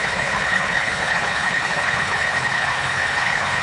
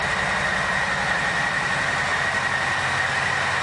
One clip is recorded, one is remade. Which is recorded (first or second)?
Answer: second